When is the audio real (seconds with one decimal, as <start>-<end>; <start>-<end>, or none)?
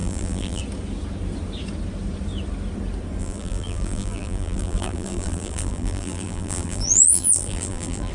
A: 0.6-3.2